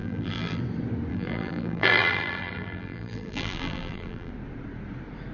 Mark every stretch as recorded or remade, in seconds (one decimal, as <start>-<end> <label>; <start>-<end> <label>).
0.0-0.6 remade; 0.6-1.1 recorded; 1.1-4.3 remade; 4.3-5.3 recorded